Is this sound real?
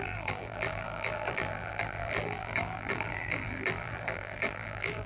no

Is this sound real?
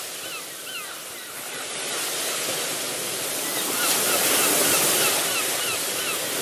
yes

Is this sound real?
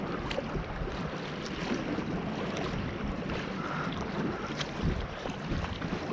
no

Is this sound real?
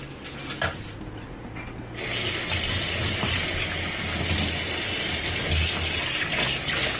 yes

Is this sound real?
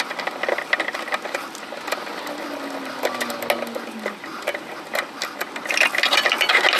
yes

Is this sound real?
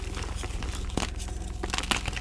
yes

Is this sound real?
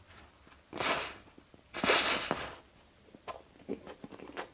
yes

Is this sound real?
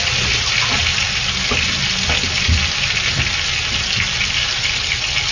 yes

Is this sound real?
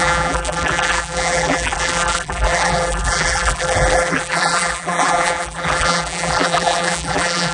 no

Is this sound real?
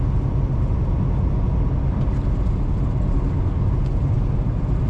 yes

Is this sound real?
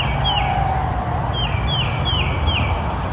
yes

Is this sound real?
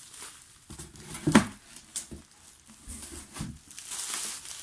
yes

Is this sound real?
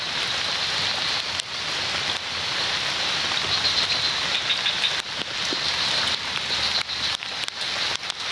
yes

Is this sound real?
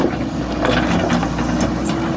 yes